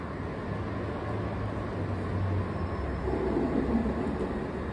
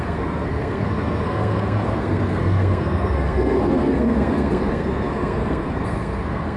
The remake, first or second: second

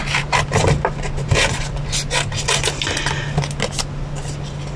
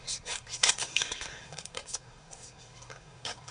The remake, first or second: second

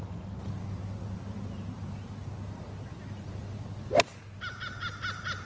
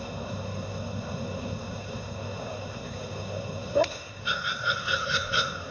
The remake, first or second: second